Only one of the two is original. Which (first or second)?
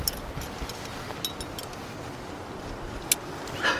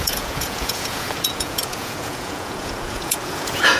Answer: first